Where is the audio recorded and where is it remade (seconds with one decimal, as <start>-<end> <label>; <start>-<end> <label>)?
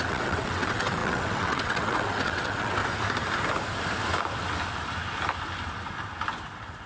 0.0-2.8 remade; 2.8-6.9 recorded